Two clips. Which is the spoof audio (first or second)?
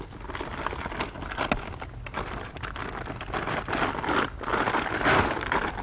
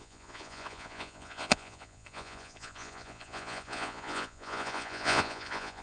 second